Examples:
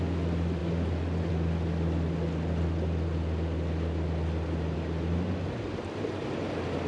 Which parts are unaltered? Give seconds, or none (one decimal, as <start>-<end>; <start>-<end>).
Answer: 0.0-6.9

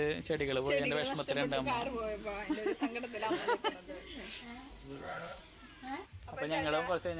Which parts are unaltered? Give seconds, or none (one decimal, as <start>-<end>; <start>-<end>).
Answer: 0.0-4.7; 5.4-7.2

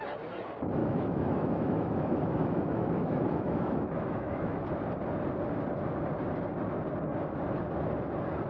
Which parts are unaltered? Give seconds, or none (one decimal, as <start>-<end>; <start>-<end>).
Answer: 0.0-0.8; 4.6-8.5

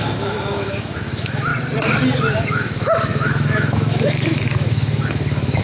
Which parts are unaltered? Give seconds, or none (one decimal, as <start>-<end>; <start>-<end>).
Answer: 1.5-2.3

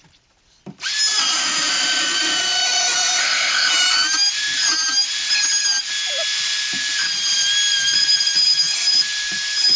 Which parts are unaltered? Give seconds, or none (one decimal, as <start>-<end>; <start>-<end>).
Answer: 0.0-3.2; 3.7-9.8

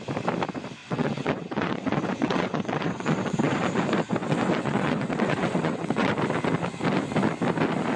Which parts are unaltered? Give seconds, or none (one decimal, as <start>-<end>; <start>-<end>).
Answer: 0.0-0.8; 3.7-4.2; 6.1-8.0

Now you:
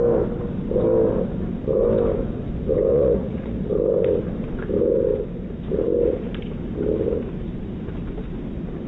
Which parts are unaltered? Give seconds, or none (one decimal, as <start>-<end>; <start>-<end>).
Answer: 0.0-2.9; 3.7-8.9